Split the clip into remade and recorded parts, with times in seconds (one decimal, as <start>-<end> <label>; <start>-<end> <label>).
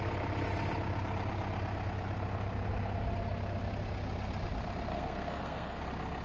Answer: 0.0-4.9 recorded; 4.9-5.8 remade; 5.8-6.2 recorded